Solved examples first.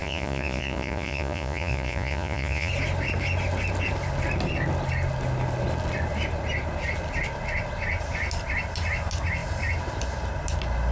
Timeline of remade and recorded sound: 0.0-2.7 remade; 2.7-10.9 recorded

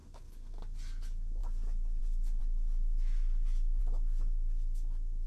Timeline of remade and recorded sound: 0.0-0.6 remade; 0.6-5.3 recorded

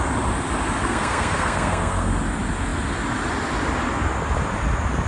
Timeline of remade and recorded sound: 0.0-0.8 recorded; 0.8-2.1 remade; 2.1-5.1 recorded

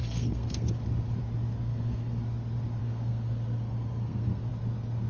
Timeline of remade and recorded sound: 0.0-0.7 remade; 0.7-1.7 recorded; 1.7-2.2 remade; 2.2-2.8 recorded; 2.8-4.5 remade; 4.5-5.1 recorded

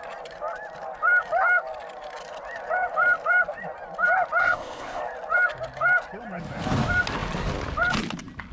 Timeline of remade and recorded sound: 0.0-4.4 recorded; 4.4-5.0 remade; 5.0-8.5 recorded

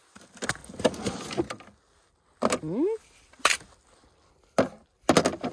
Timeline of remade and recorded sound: 0.0-5.5 recorded

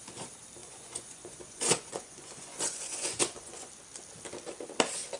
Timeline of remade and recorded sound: 0.0-0.6 recorded; 0.6-3.7 remade; 3.7-5.2 recorded

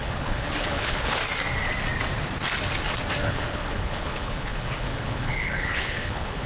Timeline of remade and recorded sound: 0.0-1.2 remade; 1.2-3.2 recorded; 3.2-6.5 remade